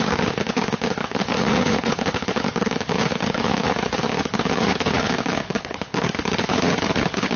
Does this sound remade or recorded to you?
remade